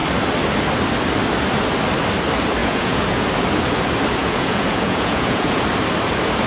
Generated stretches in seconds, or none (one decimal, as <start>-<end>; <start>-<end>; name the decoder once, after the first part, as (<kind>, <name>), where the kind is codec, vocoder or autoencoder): 2.6-3.3 (vocoder, Vocos); 4.2-5.6